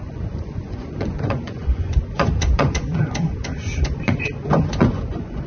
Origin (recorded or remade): remade